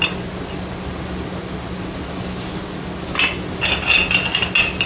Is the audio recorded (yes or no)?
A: yes